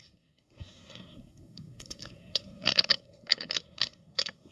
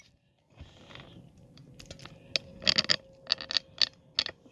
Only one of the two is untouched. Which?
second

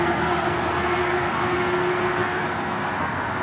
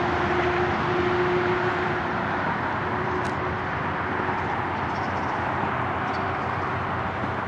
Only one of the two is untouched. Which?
second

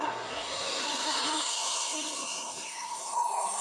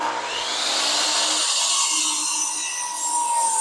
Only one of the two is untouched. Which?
second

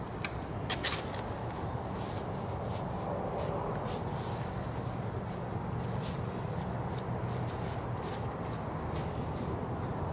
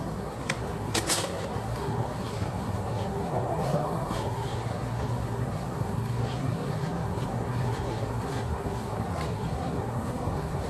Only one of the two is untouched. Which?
first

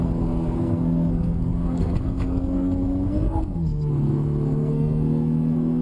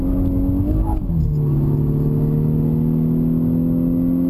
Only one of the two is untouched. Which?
second